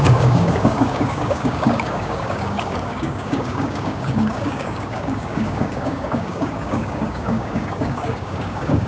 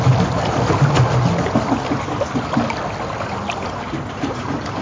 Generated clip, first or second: first